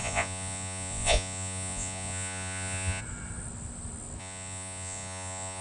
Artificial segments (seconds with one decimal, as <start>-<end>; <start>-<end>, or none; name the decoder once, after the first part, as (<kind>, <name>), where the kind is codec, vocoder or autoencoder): 0.0-3.0 (vocoder, Vocos); 4.2-5.6